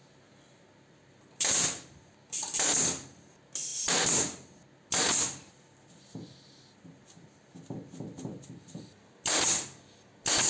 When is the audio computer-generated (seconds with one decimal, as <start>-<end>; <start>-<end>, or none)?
none